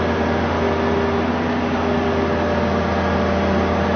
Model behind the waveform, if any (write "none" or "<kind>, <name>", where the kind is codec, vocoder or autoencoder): none